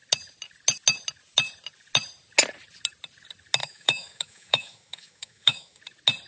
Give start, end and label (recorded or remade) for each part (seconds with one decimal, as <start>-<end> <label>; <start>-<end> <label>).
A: 0.0-3.6 recorded; 3.6-5.8 remade; 5.8-6.3 recorded